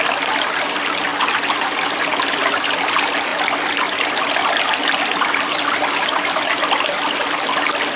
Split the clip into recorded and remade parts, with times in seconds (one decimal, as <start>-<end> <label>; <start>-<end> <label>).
0.0-8.0 recorded

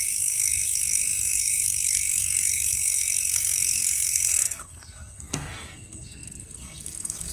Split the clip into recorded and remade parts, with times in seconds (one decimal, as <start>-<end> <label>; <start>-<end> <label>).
0.0-7.3 remade

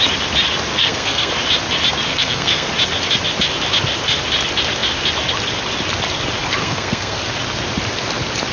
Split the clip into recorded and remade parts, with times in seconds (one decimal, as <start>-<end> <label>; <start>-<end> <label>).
0.0-0.7 recorded; 0.7-1.3 remade; 1.3-2.1 recorded; 2.1-2.7 remade; 2.7-6.6 recorded; 6.6-7.2 remade; 7.2-8.5 recorded

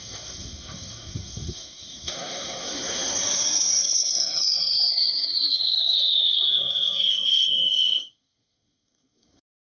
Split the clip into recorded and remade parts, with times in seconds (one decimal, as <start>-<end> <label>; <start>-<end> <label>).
0.0-9.8 remade

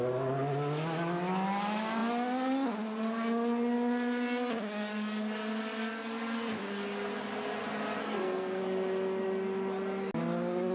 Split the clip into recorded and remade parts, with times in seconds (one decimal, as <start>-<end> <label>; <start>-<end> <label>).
0.0-8.0 recorded; 8.0-8.6 remade; 8.6-10.7 recorded